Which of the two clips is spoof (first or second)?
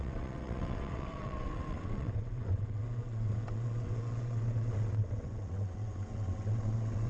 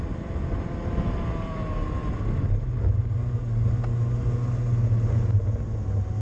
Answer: first